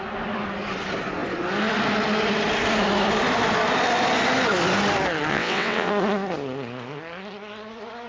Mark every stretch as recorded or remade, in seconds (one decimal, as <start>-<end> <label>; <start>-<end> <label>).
0.0-5.3 recorded; 5.3-5.9 remade; 5.9-8.1 recorded